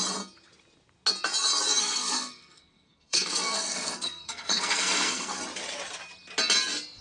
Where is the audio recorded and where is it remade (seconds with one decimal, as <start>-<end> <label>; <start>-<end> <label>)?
0.0-1.8 recorded; 1.8-5.4 remade; 5.4-7.0 recorded